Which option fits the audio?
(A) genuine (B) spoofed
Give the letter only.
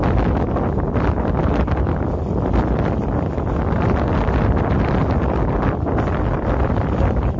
A